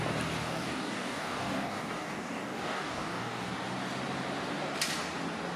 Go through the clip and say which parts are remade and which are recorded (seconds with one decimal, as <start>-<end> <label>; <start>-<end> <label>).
0.0-0.4 recorded; 0.4-3.5 remade; 3.5-5.6 recorded